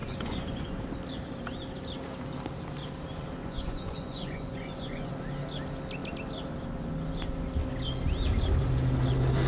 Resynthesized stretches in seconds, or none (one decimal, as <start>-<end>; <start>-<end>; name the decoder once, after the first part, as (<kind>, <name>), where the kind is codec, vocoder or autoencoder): 0.0-0.8 (vocoder, Vocos); 3.4-5.1